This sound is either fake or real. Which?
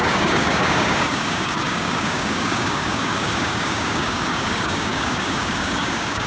fake